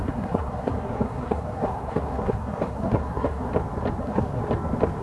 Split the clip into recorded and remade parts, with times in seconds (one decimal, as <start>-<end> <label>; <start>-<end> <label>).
0.0-3.5 remade; 3.5-4.0 recorded; 4.0-4.4 remade; 4.4-5.0 recorded